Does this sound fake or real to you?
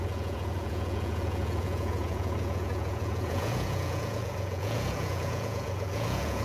fake